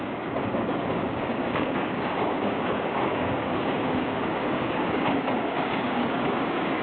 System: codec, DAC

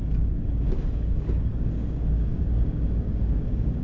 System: codec, DAC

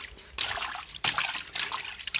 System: none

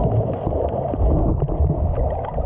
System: none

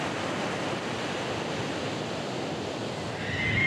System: none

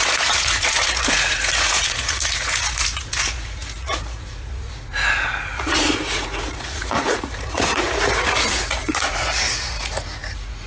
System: vocoder, Vocos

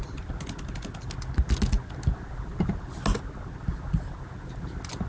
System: none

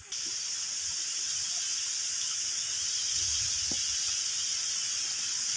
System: none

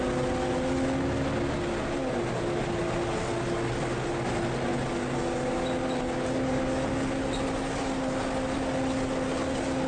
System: none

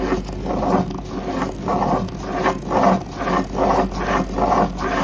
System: none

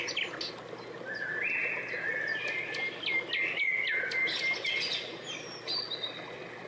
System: none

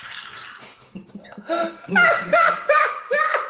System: codec, DAC